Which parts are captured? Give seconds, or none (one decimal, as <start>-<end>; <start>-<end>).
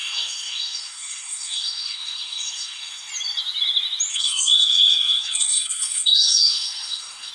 3.1-4.1